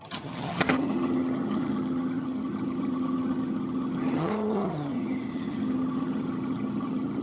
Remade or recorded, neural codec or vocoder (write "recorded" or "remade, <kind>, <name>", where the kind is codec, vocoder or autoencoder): remade, vocoder, HiFi-GAN